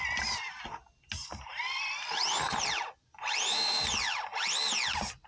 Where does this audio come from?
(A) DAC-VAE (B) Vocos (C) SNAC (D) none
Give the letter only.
D